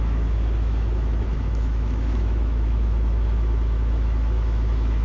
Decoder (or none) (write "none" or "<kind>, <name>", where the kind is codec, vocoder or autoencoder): autoencoder, DAC-VAE